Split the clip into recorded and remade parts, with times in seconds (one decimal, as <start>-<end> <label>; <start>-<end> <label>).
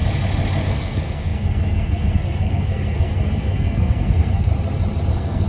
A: 0.0-0.6 recorded; 0.6-4.5 remade; 4.5-5.1 recorded; 5.1-5.5 remade